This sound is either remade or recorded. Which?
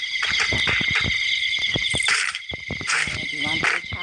recorded